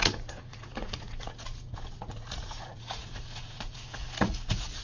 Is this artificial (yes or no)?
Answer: yes